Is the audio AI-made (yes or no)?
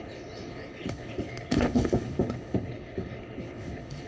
yes